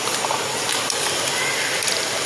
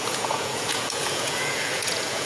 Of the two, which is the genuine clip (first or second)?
first